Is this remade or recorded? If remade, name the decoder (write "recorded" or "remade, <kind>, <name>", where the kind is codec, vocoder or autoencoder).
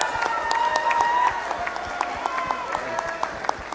recorded